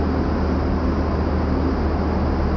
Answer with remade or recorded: recorded